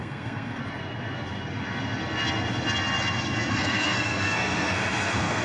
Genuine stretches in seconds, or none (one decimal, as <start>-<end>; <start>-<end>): 0.6-3.5